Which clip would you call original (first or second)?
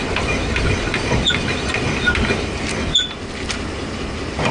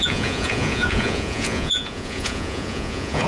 first